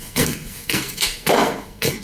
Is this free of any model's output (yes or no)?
no